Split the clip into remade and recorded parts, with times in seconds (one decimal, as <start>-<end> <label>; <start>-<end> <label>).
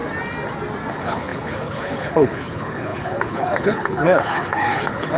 0.0-0.9 recorded; 0.9-5.2 remade